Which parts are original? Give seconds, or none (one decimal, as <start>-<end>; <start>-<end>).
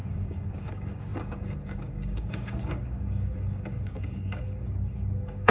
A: none